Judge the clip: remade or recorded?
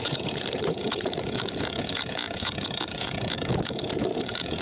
remade